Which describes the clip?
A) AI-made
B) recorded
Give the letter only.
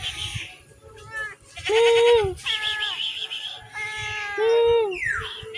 B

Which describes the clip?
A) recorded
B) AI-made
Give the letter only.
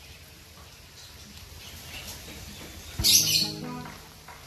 A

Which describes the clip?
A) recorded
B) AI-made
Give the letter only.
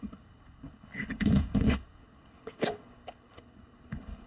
B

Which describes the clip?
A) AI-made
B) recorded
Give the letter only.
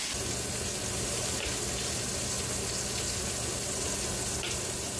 B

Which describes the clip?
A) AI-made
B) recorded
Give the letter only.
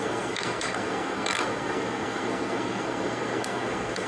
A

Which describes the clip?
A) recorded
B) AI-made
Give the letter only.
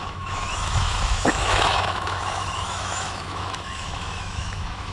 B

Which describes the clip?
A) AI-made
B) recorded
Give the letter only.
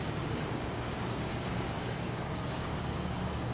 A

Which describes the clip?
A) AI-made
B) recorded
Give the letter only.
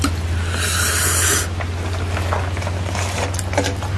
B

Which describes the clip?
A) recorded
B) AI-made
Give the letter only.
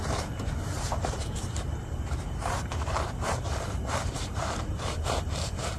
B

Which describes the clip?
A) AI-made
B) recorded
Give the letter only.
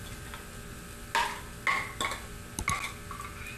B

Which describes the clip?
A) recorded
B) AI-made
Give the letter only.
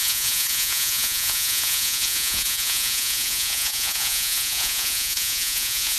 B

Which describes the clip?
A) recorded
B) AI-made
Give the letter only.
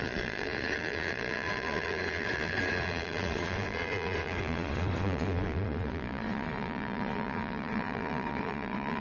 B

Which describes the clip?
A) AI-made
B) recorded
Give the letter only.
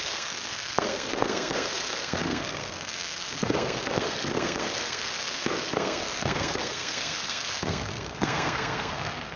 A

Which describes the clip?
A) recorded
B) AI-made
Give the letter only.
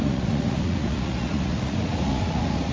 B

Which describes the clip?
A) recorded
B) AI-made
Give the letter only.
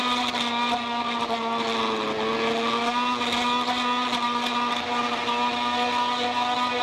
A